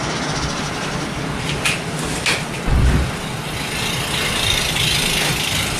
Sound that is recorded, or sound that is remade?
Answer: recorded